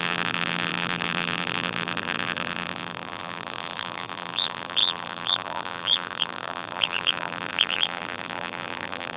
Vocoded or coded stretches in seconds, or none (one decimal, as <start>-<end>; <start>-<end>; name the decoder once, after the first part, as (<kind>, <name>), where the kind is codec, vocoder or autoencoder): 0.0-9.2 (vocoder, BigVGAN v2)